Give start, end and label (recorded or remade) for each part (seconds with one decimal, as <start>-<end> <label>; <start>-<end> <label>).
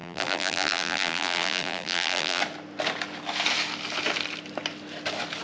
0.0-2.4 remade; 2.4-5.4 recorded